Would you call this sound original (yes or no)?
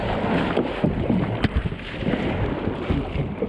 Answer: yes